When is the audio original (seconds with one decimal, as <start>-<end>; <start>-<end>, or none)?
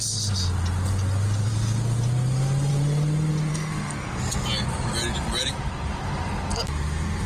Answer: 0.0-3.5; 4.2-7.3